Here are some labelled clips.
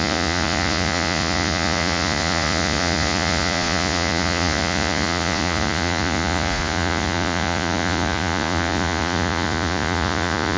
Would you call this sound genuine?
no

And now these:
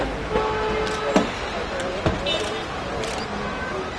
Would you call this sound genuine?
yes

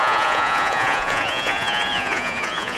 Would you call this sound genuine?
no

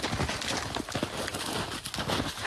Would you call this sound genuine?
yes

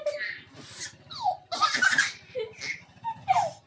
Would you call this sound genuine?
yes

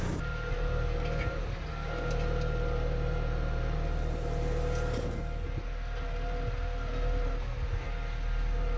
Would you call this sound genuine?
yes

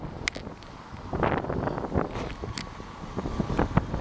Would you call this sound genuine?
yes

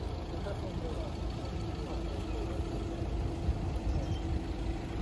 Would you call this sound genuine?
yes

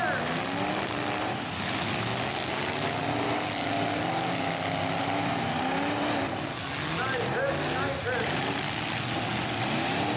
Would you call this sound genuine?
yes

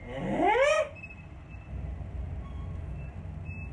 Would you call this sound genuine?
yes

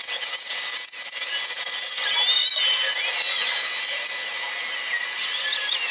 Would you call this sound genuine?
yes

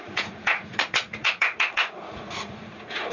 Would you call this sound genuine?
no